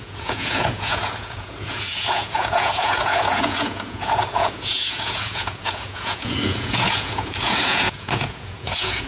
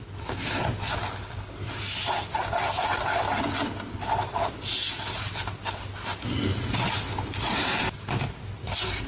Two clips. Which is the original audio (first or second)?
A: second